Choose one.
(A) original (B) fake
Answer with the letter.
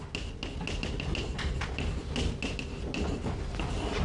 A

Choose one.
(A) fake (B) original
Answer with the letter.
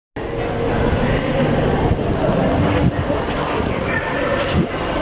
B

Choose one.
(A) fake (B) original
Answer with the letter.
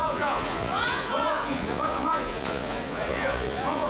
A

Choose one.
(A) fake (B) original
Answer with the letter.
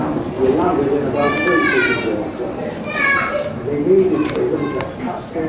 B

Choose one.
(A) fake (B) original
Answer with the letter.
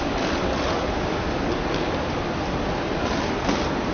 B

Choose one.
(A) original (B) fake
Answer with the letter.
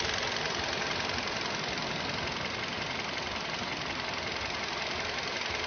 A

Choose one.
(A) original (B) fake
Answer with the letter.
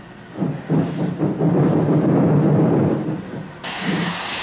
A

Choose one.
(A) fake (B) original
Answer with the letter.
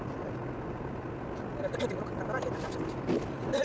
B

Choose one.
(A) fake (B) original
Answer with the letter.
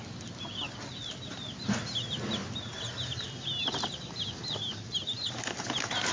B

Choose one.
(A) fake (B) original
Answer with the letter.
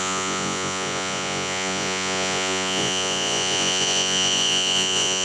A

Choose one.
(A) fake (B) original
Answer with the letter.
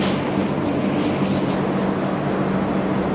B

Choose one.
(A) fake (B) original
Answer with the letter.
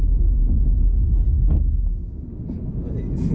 B